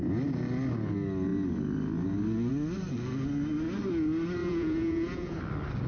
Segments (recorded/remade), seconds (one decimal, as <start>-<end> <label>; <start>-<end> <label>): 0.0-4.4 recorded; 4.4-5.4 remade; 5.4-5.9 recorded